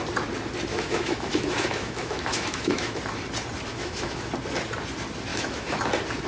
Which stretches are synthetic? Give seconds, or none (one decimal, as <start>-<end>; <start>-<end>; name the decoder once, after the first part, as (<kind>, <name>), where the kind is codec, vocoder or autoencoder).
0.7-3.0 (autoencoder, DAC-VAE); 3.7-4.3; 5.3-5.8